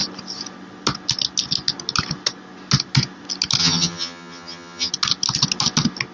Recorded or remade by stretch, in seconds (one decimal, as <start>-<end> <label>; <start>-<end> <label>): 0.0-3.6 recorded; 3.6-4.9 remade; 4.9-6.1 recorded